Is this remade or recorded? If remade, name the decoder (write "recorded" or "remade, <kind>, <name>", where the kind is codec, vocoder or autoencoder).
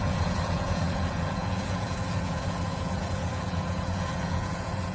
remade, vocoder, Vocos